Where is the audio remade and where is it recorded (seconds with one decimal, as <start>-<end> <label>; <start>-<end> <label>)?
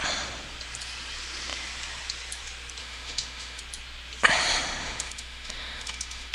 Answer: 0.0-2.8 recorded; 2.8-3.6 remade; 3.6-4.8 recorded; 4.8-6.3 remade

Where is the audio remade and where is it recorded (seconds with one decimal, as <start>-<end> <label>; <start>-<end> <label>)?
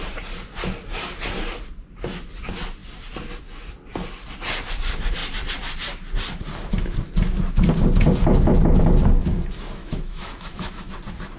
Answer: 0.0-9.8 recorded; 9.8-10.9 remade; 10.9-11.4 recorded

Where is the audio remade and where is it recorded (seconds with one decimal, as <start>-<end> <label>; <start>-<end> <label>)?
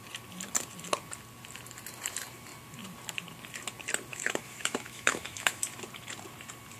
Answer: 0.0-4.1 recorded; 4.1-5.6 remade; 5.6-6.8 recorded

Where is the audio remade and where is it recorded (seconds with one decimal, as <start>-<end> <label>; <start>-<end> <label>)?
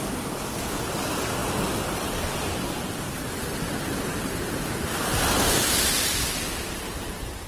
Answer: 0.0-7.5 recorded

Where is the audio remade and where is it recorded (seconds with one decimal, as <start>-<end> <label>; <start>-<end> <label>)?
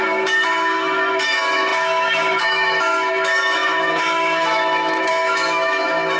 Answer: 0.0-6.2 remade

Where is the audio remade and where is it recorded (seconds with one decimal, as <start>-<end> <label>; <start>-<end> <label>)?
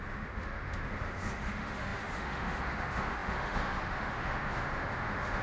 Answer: 0.0-5.4 remade